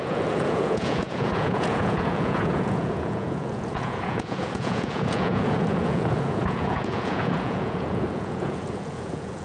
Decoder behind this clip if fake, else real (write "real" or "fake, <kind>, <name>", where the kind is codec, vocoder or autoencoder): fake, vocoder, Vocos